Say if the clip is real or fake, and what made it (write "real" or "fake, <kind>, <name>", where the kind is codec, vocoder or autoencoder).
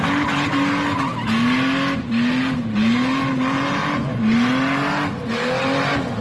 real